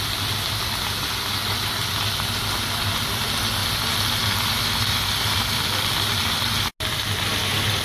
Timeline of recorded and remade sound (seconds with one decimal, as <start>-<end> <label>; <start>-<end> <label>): 0.0-7.8 recorded